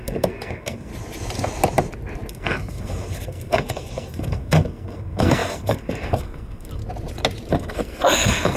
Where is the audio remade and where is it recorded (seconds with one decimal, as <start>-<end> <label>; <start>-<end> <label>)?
0.0-0.9 remade; 0.9-2.3 recorded; 2.3-6.8 remade; 6.8-7.5 recorded; 7.5-8.6 remade